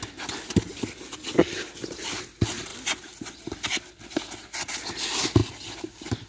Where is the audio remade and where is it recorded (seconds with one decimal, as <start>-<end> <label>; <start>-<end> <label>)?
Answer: 0.0-5.4 recorded; 5.4-6.3 remade